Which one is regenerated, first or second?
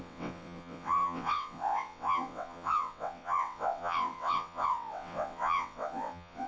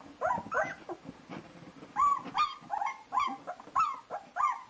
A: first